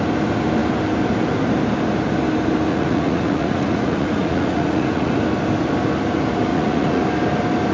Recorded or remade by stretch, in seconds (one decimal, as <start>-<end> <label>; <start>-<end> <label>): 0.0-2.7 recorded; 2.7-5.1 remade; 5.1-6.5 recorded; 6.5-7.0 remade; 7.0-7.7 recorded